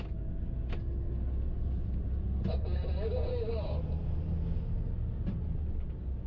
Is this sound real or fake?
real